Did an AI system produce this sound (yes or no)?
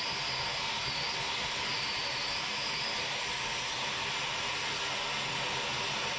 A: no